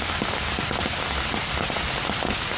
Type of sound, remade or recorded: recorded